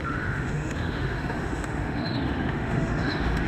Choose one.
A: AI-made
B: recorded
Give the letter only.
A